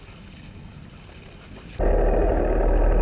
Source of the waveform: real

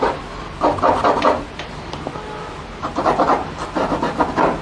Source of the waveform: real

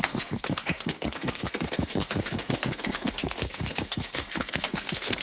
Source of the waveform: fake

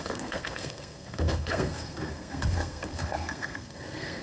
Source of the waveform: fake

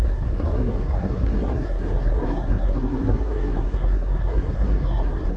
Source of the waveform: fake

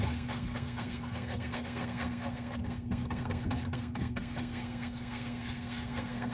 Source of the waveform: fake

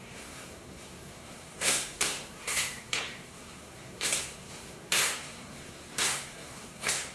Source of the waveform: fake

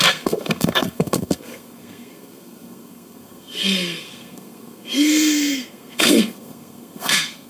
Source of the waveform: fake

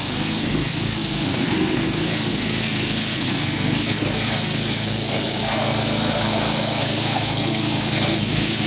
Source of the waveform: fake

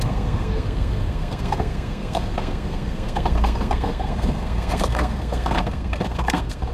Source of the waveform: fake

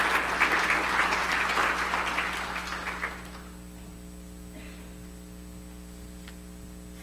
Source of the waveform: real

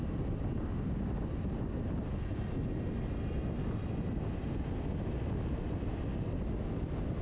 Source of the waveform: real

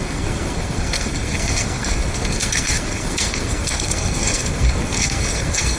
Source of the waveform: fake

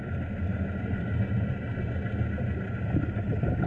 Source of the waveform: real